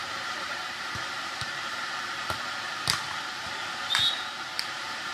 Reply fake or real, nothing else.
fake